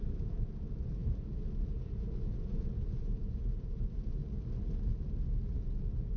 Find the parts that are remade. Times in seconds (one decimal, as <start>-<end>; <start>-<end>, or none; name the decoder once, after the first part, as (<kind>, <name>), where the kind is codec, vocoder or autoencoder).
0.0-1.0 (vocoder, Vocos); 1.9-4.2; 5.6-6.2